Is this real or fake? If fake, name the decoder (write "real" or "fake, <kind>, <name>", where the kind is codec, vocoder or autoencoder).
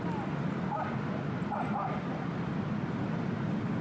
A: real